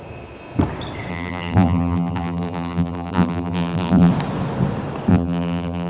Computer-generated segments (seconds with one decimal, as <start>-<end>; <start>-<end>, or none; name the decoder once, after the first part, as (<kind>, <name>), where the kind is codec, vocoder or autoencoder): 1.1-4.1 (vocoder, BigVGAN v2); 5.1-5.9